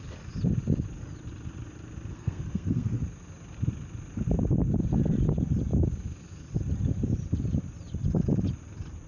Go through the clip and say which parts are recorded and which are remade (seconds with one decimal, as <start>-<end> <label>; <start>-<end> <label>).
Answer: 0.0-2.1 recorded; 2.1-3.0 remade; 3.0-9.1 recorded